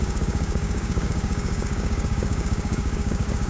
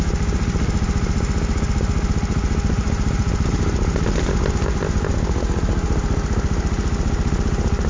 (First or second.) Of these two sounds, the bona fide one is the second